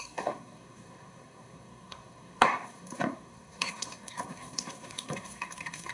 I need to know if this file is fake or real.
fake